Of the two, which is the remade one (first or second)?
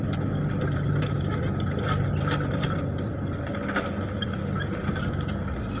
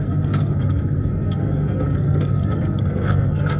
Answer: second